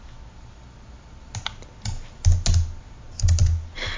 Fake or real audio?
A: real